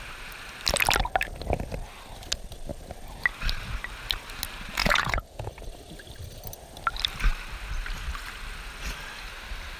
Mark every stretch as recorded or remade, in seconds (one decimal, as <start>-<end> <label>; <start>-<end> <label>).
0.0-4.8 recorded; 4.8-5.5 remade; 5.5-9.8 recorded